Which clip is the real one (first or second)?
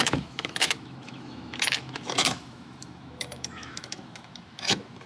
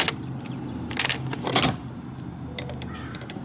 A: second